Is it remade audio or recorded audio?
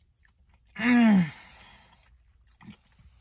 recorded